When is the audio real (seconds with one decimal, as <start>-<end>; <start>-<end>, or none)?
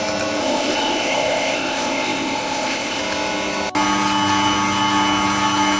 0.0-0.4; 3.0-5.8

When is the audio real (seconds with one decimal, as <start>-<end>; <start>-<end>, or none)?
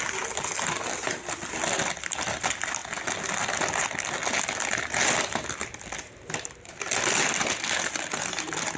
0.0-8.8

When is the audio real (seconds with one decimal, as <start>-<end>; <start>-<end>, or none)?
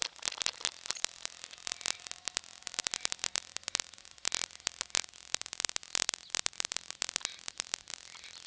0.0-8.5